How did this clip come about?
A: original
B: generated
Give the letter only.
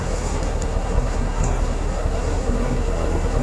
B